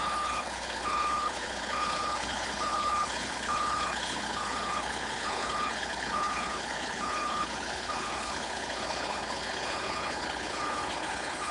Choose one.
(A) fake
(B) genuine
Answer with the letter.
A